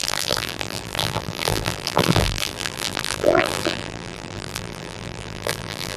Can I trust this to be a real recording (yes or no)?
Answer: no